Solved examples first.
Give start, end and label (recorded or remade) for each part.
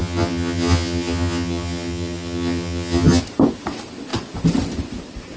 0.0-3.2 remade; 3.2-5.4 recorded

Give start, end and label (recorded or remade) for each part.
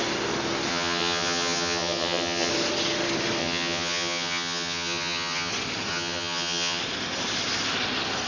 0.0-0.7 recorded; 0.7-2.5 remade; 2.5-3.4 recorded; 3.4-5.5 remade; 5.5-5.9 recorded; 5.9-6.8 remade; 6.8-8.3 recorded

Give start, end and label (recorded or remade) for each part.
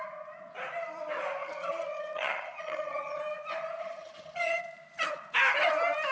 0.0-1.4 recorded; 1.4-3.2 remade; 3.2-3.8 recorded; 3.8-4.6 remade; 4.6-6.1 recorded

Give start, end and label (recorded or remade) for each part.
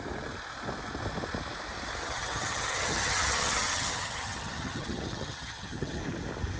0.0-2.0 recorded; 2.0-6.0 remade; 6.0-6.6 recorded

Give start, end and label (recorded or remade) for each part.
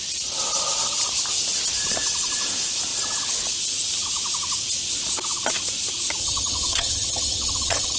0.0-6.2 recorded; 6.2-8.0 remade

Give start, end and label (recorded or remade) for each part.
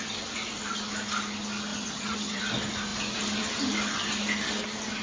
0.0-1.7 recorded; 1.7-2.4 remade; 2.4-5.0 recorded